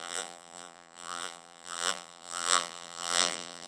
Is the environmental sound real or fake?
fake